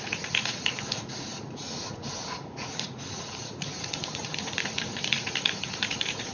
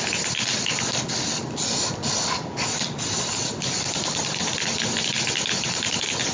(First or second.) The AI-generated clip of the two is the first